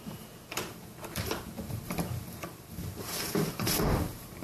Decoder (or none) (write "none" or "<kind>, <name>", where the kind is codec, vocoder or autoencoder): vocoder, BigVGAN v2